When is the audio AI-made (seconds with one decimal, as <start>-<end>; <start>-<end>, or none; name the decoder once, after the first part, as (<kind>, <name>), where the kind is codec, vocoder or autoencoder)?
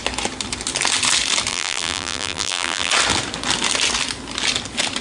1.5-2.9 (vocoder, BigVGAN v2)